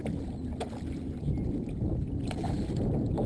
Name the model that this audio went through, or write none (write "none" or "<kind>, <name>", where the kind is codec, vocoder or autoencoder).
none